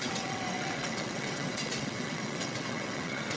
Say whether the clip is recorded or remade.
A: remade